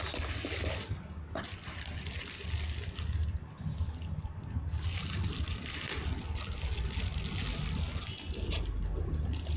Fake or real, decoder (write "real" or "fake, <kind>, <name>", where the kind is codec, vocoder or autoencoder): real